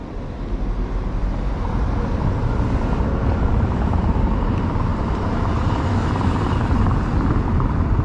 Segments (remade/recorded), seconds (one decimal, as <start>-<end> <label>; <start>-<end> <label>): 0.0-4.9 recorded; 4.9-5.8 remade; 5.8-8.0 recorded